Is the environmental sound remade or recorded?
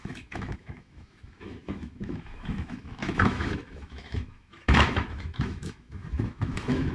remade